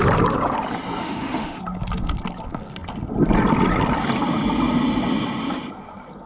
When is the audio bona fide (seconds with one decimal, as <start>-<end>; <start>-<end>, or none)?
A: 0.0-1.0; 1.6-6.3